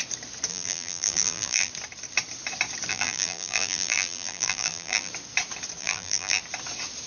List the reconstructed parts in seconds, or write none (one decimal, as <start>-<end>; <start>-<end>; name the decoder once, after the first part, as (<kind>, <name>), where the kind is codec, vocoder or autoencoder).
0.5-1.7 (vocoder, BigVGAN v2); 2.9-5.1; 5.8-6.4